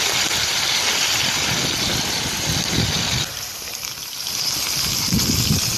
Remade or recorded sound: recorded